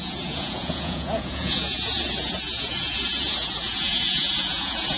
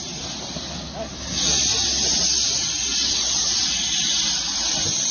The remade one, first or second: first